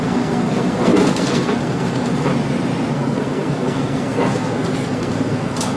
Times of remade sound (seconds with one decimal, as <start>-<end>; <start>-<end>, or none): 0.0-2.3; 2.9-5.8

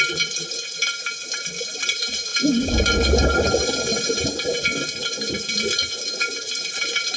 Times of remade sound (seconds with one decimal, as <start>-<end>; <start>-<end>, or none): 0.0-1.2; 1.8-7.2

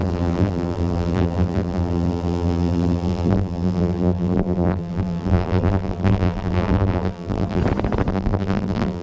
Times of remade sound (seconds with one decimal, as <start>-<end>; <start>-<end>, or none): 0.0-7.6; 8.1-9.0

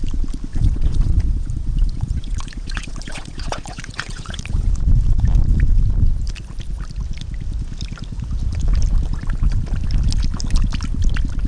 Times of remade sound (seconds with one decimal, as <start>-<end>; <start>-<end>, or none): 0.5-4.7